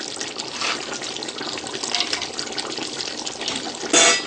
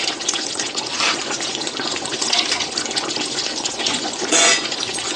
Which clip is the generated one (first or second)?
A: second